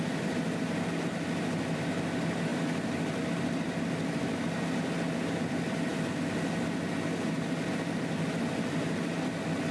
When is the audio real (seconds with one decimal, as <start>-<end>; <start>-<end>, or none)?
0.0-9.7